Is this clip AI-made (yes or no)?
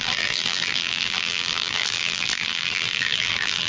yes